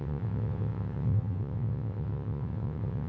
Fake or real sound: fake